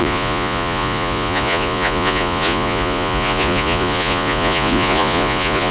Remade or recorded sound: remade